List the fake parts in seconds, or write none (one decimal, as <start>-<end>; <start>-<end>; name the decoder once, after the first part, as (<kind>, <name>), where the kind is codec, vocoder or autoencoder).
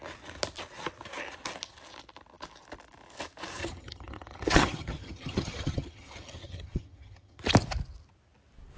3.6-7.4 (vocoder, HiFi-GAN)